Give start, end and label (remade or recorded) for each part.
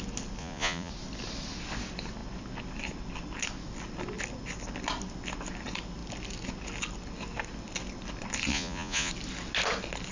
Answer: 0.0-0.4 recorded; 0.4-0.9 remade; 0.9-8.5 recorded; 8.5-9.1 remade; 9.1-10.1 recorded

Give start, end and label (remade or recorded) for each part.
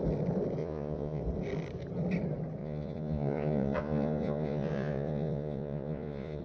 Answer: 0.0-0.6 recorded; 0.6-1.2 remade; 1.2-2.6 recorded; 2.6-6.4 remade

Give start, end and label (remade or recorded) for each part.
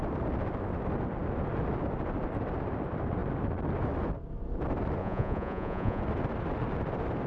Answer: 0.0-5.0 recorded; 5.0-6.0 remade; 6.0-7.3 recorded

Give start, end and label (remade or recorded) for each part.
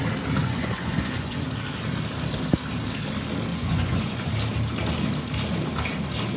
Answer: 0.0-0.4 recorded; 0.4-1.5 remade; 1.5-3.5 recorded; 3.5-4.3 remade; 4.3-6.4 recorded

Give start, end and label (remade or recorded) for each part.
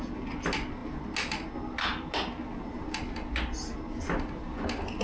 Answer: 0.0-5.0 recorded